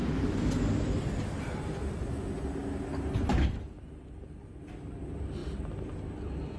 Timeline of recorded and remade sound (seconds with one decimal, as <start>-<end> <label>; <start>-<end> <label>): 0.0-6.6 recorded